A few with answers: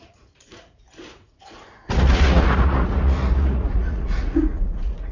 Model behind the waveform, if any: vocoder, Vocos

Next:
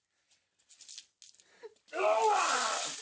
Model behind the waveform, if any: none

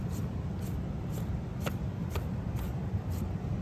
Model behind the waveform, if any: none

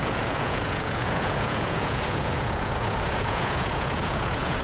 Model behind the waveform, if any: vocoder, Vocos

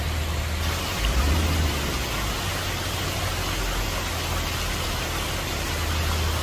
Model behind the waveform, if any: none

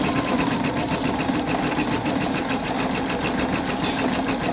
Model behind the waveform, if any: none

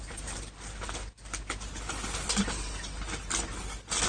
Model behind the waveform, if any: none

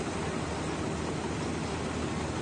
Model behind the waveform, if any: none